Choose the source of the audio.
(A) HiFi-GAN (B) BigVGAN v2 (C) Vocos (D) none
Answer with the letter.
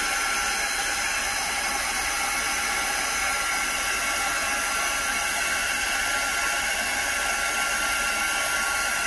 D